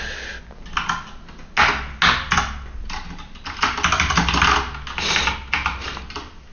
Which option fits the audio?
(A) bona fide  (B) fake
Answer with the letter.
A